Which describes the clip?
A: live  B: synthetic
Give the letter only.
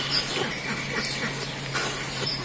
A